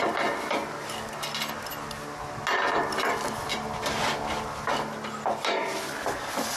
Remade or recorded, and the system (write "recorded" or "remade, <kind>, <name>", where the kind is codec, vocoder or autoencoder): recorded